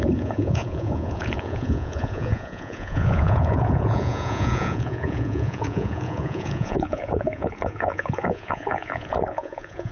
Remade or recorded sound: remade